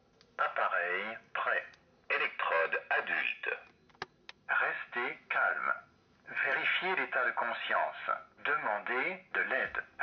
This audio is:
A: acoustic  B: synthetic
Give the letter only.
A